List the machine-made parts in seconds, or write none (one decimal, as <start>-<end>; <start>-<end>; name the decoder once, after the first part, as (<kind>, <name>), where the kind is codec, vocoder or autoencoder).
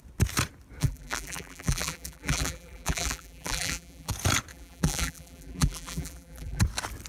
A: 0.8-4.1 (vocoder, BigVGAN v2); 4.5-6.6